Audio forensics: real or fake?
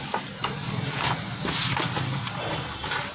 real